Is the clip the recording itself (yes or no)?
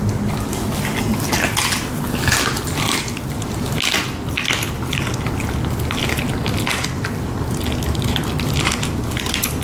yes